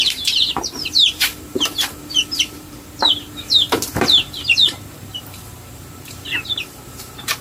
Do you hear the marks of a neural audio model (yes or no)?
yes